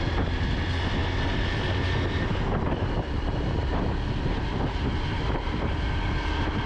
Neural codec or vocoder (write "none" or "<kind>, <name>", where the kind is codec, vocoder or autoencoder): none